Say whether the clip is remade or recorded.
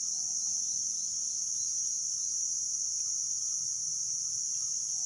recorded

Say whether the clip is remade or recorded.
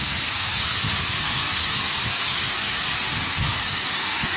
remade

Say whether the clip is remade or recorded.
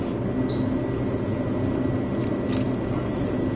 recorded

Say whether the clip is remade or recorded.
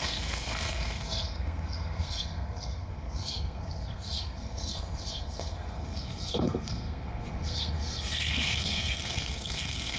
remade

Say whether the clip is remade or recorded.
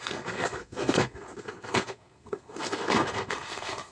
remade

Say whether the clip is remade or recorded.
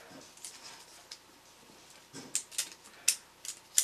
recorded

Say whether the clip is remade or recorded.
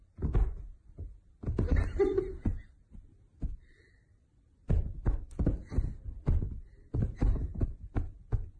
recorded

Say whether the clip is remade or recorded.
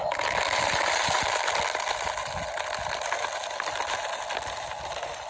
recorded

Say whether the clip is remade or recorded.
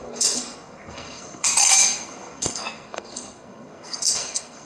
remade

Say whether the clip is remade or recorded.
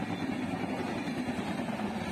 recorded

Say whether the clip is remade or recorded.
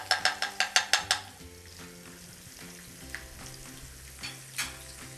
recorded